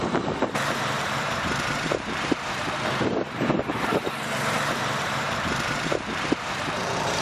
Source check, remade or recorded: remade